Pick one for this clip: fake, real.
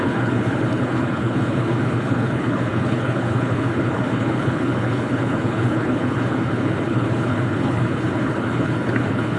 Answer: fake